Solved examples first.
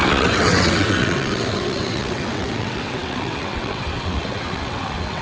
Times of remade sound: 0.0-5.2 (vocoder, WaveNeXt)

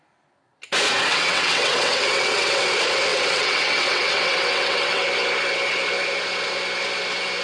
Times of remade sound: 1.1-2.6 (vocoder, WaveNeXt); 3.1-5.0

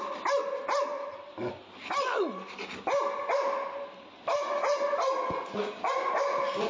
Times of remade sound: none

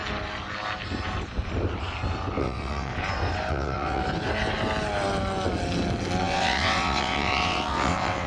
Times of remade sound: 2.4-2.9 (vocoder, WaveNeXt); 3.5-4.0; 6.2-8.3

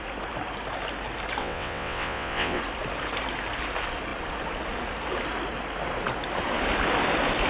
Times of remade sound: 1.4-2.6 (vocoder, WaveNeXt)